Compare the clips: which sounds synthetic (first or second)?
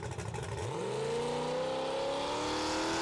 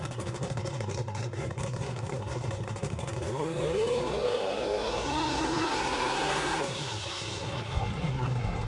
second